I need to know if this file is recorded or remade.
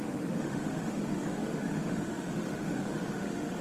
remade